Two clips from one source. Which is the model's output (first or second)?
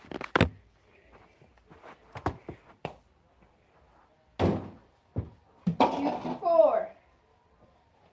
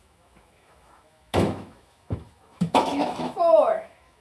second